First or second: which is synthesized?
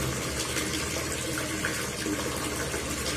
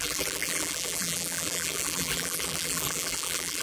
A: second